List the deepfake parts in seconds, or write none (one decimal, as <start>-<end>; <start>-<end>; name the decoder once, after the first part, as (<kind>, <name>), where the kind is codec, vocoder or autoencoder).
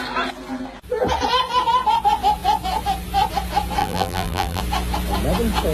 3.8-4.6 (vocoder, BigVGAN v2)